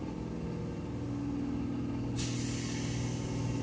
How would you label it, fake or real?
real